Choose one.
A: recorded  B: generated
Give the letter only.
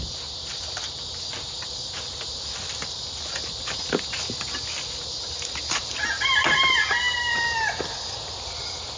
A